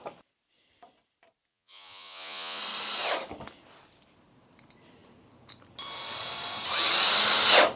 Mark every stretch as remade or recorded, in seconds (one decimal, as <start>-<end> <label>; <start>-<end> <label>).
0.0-1.5 recorded; 1.5-2.6 remade; 2.6-7.8 recorded